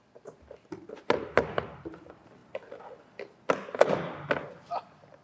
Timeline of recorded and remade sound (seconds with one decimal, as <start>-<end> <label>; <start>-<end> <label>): 0.0-5.2 recorded